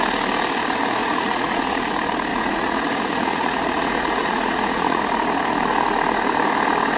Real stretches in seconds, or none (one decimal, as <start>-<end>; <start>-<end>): 0.0-1.0; 1.9-2.3; 5.0-7.0